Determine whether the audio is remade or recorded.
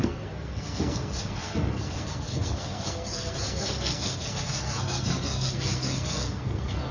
remade